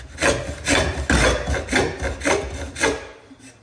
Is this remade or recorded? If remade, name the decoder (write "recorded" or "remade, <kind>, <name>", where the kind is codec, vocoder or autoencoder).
recorded